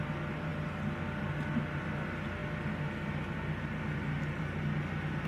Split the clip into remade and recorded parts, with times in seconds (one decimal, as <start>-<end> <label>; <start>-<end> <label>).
0.0-5.3 recorded

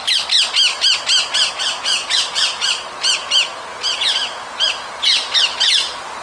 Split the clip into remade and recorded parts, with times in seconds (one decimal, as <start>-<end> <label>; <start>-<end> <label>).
0.0-6.2 recorded

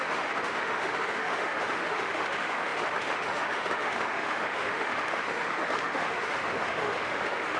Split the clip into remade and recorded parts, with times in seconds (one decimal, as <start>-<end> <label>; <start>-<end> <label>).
0.0-7.6 remade

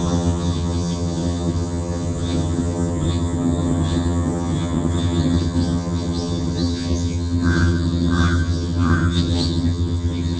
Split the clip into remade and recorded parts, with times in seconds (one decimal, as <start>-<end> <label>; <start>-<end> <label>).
0.0-10.4 remade